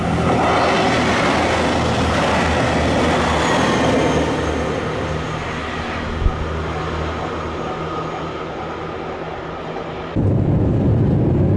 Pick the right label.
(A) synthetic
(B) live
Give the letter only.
B